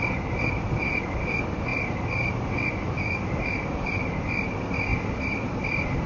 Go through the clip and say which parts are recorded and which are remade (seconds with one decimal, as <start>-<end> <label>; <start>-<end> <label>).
0.0-1.7 recorded; 1.7-4.4 remade; 4.4-6.1 recorded